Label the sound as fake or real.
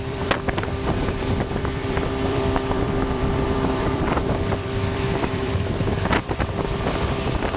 fake